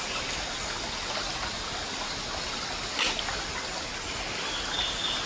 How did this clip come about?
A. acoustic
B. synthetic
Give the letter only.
A